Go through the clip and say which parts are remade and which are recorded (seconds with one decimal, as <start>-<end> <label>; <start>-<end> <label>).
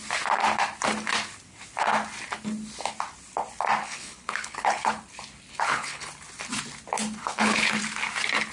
0.0-3.8 recorded; 3.8-4.9 remade; 4.9-5.5 recorded; 5.5-6.1 remade; 6.1-7.2 recorded; 7.2-7.8 remade; 7.8-8.5 recorded